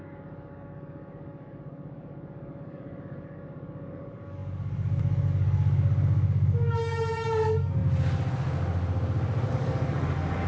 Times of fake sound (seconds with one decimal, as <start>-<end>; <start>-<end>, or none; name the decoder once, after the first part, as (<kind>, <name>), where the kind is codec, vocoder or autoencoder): 0.0-7.8 (codec, DAC); 9.5-10.5